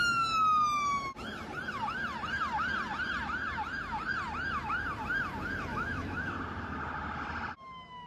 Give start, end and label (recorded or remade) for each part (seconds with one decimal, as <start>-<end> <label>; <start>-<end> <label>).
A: 0.0-5.7 recorded; 5.7-6.3 remade; 6.3-8.1 recorded